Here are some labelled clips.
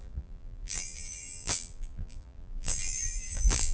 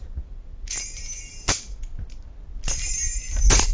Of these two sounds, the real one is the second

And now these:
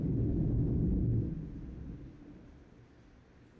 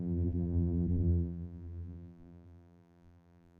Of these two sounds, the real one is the first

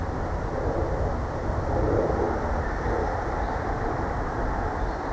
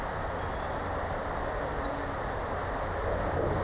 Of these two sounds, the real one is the second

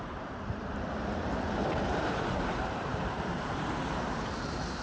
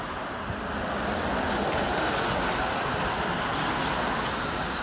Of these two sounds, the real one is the second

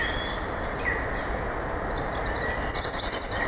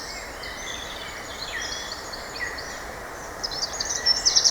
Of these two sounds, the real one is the first